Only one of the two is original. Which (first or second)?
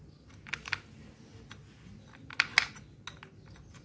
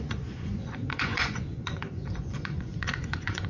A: first